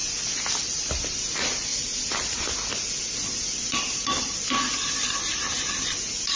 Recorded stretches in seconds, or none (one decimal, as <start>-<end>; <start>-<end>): 0.0-6.4